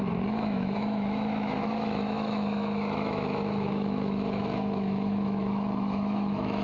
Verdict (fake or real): fake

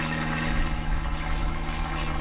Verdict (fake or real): fake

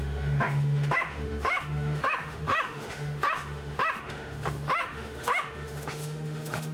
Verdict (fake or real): fake